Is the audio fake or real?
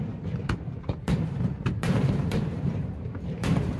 fake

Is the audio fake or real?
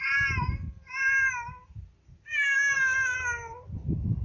real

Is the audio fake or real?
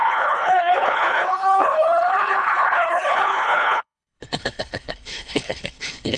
fake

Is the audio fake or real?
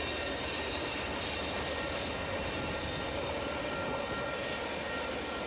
real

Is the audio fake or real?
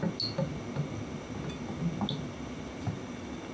real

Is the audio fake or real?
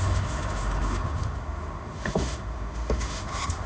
fake